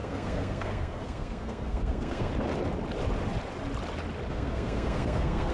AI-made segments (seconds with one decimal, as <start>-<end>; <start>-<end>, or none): 0.0-2.3; 4.3-5.5